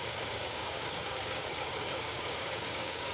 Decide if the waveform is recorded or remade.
remade